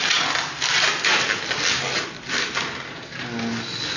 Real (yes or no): yes